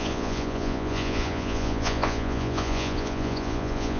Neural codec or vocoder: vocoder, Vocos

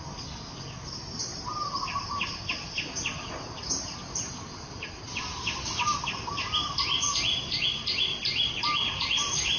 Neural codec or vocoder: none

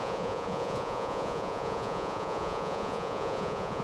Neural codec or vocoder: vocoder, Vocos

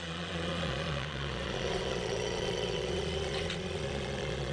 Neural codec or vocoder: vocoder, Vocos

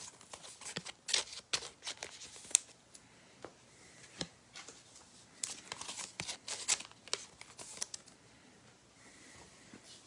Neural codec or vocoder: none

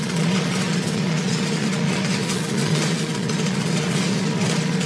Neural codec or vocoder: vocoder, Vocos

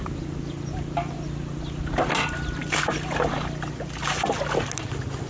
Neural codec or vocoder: none